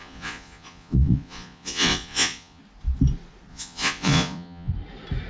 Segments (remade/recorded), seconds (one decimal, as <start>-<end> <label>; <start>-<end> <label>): 0.0-2.6 remade; 2.6-3.5 recorded; 3.5-4.7 remade; 4.7-5.3 recorded